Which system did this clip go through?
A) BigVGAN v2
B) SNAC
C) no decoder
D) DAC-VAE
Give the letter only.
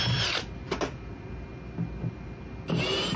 C